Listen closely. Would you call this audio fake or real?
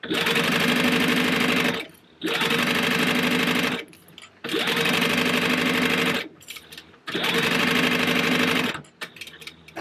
real